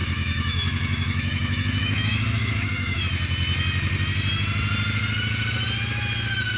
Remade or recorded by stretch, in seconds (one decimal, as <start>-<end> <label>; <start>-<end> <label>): 0.0-3.0 remade; 3.0-6.6 recorded